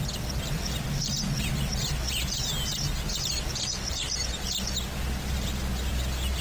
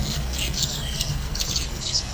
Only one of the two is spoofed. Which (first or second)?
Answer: second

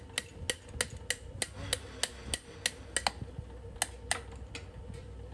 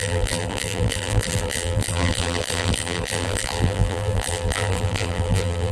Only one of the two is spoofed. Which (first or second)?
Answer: second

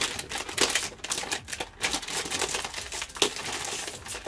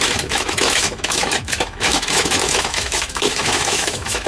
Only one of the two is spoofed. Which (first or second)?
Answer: second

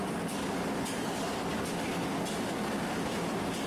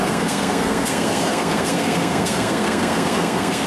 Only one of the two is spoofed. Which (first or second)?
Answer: second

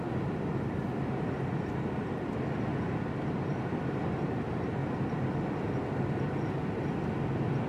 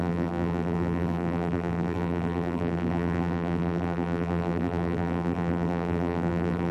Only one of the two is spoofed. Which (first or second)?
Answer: second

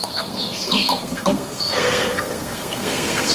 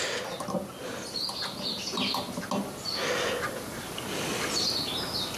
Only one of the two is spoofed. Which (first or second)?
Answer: first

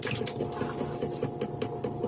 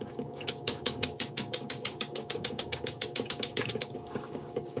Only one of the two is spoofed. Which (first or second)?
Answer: second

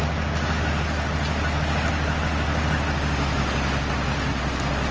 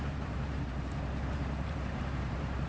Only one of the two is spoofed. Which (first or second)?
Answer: second